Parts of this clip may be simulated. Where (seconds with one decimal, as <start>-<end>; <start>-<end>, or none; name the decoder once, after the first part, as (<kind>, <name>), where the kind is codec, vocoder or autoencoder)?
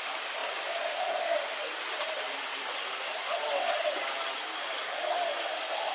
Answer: none